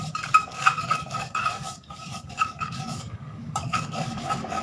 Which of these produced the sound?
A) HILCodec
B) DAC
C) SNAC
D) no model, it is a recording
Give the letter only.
B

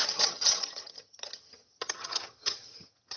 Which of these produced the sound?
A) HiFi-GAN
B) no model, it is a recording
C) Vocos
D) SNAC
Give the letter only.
A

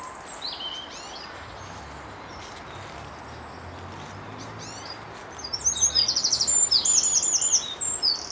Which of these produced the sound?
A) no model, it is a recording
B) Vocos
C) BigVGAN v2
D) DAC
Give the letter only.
A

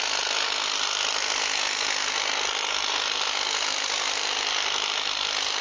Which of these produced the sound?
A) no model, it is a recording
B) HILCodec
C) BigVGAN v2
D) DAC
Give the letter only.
A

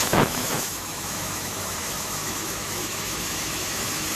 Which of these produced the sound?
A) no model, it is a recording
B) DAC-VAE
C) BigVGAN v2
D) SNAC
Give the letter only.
B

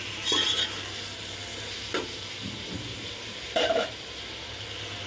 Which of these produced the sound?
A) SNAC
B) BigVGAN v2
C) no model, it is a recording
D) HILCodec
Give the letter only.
B